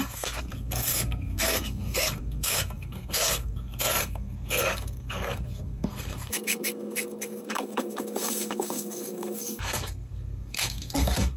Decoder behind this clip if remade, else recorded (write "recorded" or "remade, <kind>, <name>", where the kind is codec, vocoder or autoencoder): remade, codec, SNAC